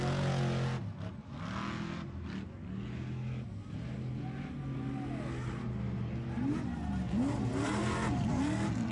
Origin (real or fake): real